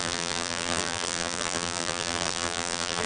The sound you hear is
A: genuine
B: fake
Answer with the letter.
B